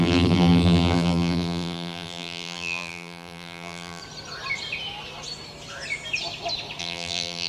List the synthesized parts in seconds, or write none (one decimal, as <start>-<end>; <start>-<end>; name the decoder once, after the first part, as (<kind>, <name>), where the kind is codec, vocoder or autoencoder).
0.0-4.0 (vocoder, BigVGAN v2); 6.8-7.5